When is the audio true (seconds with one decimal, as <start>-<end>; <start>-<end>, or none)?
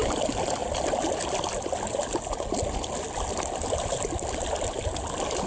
0.0-5.5